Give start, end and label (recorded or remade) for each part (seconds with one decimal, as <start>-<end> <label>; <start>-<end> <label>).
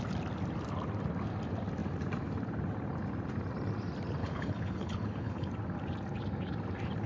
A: 0.0-4.2 recorded; 4.2-5.5 remade; 5.5-7.1 recorded